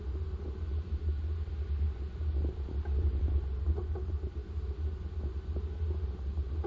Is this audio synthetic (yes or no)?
no